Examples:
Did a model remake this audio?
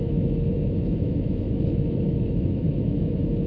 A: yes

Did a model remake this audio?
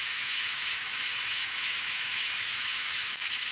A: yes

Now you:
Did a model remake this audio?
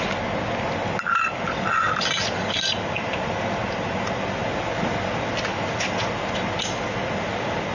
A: no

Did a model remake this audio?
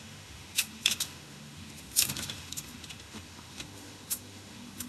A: yes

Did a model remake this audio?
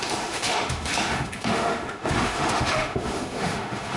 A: yes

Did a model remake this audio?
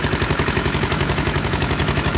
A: yes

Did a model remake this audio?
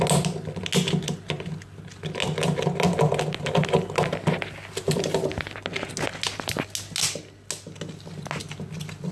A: no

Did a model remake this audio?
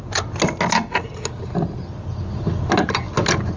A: no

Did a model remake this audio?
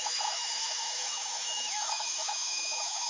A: yes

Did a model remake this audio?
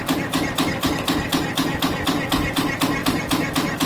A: no